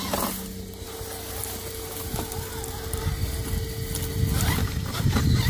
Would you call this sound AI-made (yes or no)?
no